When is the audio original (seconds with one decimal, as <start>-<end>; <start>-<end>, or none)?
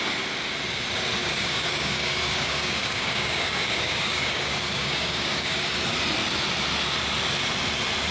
0.0-1.2; 5.7-8.1